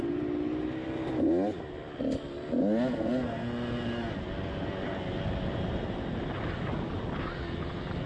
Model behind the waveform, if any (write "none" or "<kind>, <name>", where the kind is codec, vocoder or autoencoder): none